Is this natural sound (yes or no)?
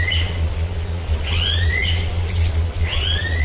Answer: no